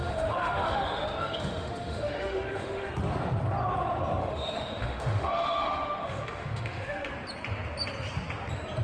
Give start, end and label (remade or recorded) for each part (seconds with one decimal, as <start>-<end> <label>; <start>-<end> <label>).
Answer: 0.0-2.9 remade; 2.9-4.2 recorded; 4.2-7.1 remade; 7.1-8.8 recorded